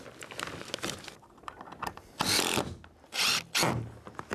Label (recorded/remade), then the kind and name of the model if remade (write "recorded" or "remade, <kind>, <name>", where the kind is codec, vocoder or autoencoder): recorded